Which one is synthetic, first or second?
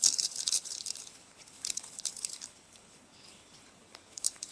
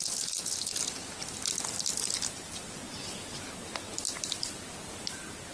first